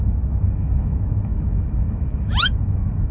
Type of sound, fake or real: fake